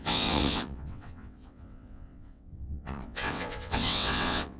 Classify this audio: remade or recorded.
remade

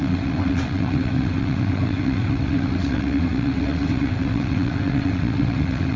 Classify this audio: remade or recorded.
remade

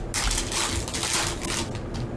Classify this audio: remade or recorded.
recorded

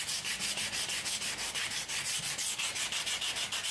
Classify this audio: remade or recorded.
recorded